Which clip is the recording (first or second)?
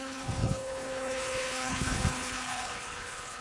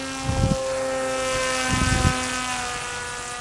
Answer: second